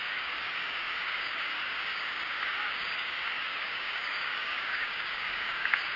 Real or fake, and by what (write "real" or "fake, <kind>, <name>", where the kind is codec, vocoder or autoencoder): fake, codec, DAC